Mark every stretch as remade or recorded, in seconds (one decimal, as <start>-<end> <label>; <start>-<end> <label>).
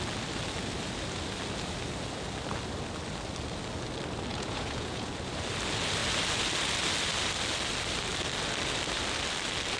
0.0-4.3 recorded; 4.3-5.1 remade; 5.1-9.8 recorded